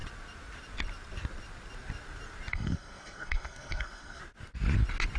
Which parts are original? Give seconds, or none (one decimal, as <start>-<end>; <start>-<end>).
0.0-2.5; 4.2-5.2